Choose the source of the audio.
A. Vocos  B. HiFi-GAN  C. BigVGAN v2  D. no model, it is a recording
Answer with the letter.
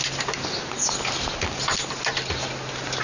D